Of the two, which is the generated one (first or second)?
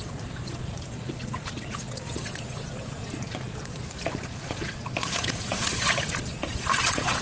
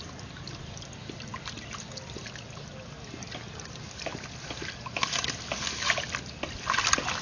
first